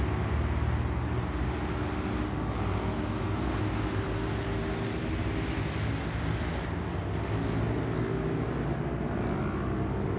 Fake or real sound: real